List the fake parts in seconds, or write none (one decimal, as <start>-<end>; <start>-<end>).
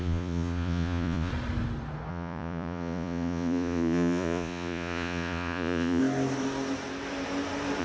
0.0-1.3; 2.1-6.0